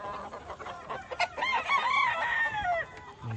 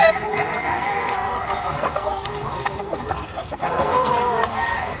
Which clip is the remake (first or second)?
second